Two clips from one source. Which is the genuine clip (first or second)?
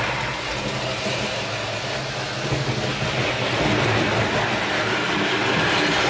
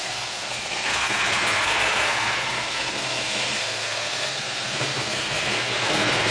first